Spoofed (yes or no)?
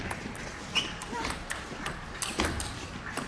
no